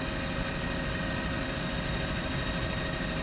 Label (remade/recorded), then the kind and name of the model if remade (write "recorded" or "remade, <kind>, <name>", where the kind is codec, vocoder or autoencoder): recorded